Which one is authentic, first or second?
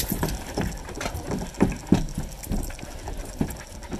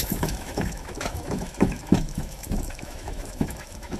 first